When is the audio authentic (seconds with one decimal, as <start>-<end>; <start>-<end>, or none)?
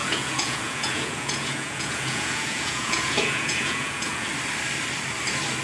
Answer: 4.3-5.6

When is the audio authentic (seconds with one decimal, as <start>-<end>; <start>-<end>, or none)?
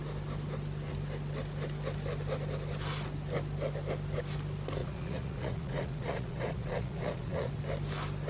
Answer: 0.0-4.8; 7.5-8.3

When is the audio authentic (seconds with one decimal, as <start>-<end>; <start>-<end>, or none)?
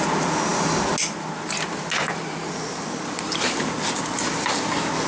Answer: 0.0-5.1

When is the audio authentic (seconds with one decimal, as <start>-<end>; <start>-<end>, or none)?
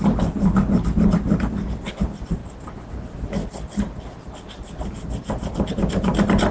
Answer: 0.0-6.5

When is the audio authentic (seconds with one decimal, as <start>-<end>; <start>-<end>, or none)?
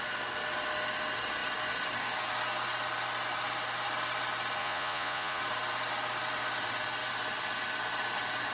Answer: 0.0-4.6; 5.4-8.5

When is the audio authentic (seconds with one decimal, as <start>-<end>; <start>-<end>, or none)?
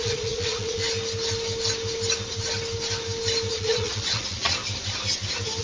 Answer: 0.8-3.5; 4.6-5.6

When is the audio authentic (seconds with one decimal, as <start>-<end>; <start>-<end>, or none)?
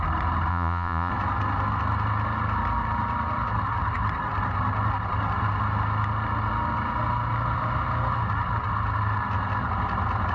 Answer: 0.0-0.5; 1.1-10.3